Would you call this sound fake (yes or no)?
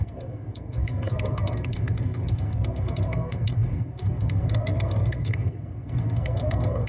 yes